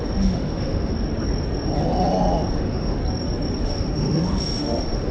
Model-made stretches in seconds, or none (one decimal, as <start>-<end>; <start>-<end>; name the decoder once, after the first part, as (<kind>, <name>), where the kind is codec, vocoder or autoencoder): 0.0-0.9 (autoencoder, DAC-VAE); 2.5-3.0; 3.6-5.1